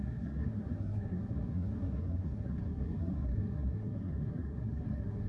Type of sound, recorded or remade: remade